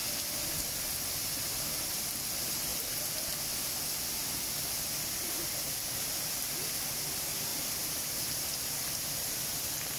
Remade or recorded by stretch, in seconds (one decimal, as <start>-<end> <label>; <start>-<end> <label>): 0.0-10.0 recorded